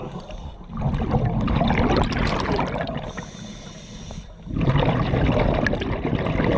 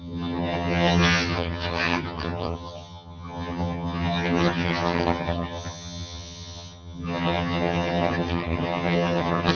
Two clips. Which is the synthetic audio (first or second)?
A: second